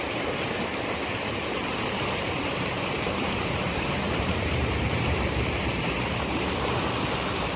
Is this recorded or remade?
remade